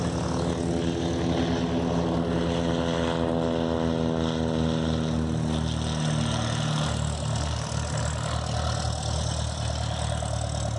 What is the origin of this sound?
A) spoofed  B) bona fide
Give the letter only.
B